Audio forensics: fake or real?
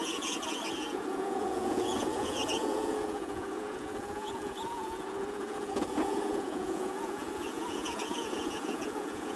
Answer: fake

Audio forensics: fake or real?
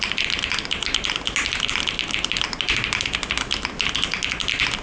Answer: real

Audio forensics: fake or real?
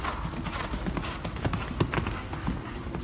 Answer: real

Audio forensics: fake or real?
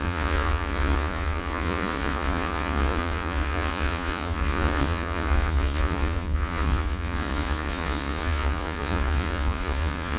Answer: fake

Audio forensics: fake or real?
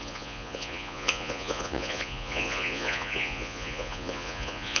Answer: fake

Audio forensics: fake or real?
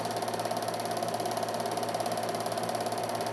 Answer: real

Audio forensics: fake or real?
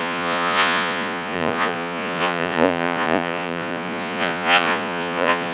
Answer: fake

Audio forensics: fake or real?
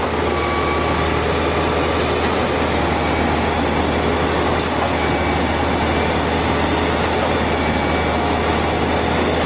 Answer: real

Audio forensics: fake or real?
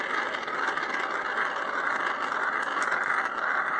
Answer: real